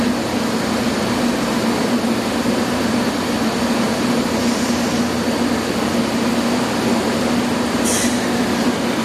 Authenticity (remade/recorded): recorded